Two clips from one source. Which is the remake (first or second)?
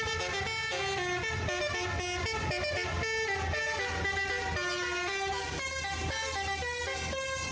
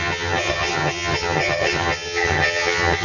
second